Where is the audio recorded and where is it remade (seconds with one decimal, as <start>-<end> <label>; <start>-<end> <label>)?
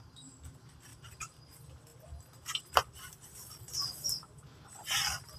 0.0-5.4 recorded